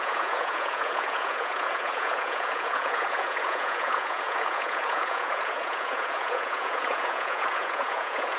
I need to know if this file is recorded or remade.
remade